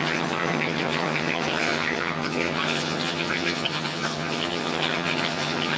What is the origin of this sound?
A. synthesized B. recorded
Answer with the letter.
A